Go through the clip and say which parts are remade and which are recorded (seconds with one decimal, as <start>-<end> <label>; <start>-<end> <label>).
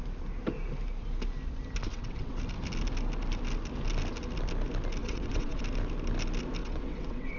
0.0-1.9 recorded; 1.9-2.4 remade; 2.4-5.0 recorded; 5.0-5.6 remade; 5.6-6.6 recorded; 6.6-7.4 remade